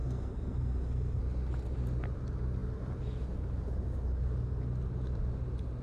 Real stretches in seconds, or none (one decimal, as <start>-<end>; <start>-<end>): 1.2-5.8